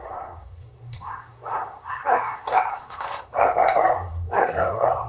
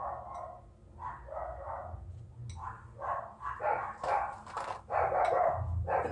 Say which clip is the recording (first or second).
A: second